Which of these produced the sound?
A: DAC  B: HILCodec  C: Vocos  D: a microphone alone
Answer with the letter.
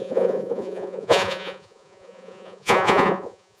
C